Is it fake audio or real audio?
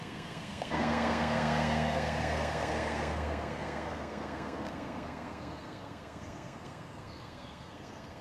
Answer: fake